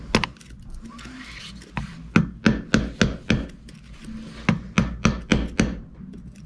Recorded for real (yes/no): yes